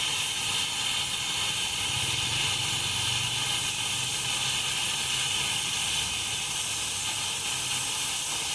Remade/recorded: recorded